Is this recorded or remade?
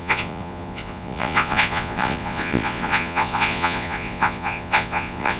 remade